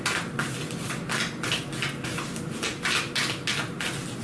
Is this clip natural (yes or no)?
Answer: yes